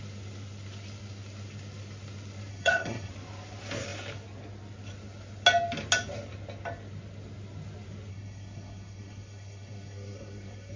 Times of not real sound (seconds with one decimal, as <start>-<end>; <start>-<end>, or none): 2.5-3.1; 8.1-10.8